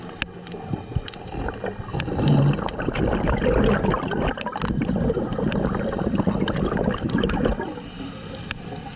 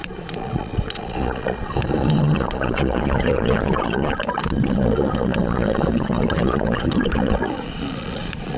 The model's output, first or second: second